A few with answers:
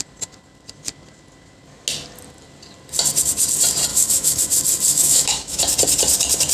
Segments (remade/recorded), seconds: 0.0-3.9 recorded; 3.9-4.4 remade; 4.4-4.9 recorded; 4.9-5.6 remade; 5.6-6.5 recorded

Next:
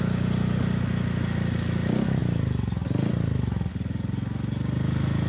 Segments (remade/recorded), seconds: 0.0-5.3 recorded

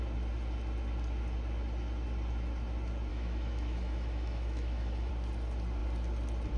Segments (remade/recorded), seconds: 0.0-3.1 recorded; 3.1-5.1 remade; 5.1-6.6 recorded

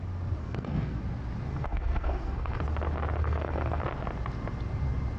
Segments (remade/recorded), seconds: 0.0-0.4 recorded; 0.4-1.0 remade; 1.0-1.5 recorded; 1.5-2.6 remade; 2.6-3.2 recorded; 3.2-3.8 remade; 3.8-5.2 recorded

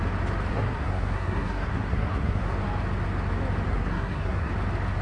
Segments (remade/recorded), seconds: 0.0-0.5 recorded; 0.5-2.5 remade; 2.5-3.7 recorded; 3.7-4.5 remade; 4.5-5.0 recorded

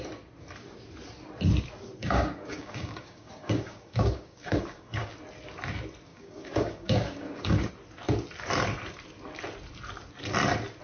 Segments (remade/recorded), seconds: 0.0-2.0 recorded; 2.0-5.1 remade; 5.1-6.1 recorded; 6.1-7.7 remade; 7.7-10.8 recorded

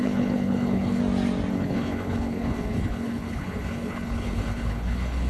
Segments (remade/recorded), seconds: 0.0-1.0 remade; 1.0-1.5 recorded; 1.5-5.3 remade